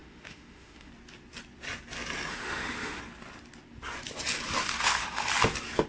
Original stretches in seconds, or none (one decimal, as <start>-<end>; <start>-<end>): 0.9-2.3; 3.0-4.6; 5.3-5.9